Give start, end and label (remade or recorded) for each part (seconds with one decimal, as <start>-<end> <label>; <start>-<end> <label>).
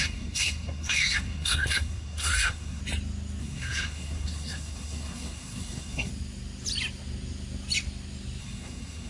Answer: 0.0-2.8 remade; 2.8-3.4 recorded; 3.4-6.1 remade; 6.1-8.4 recorded; 8.4-9.1 remade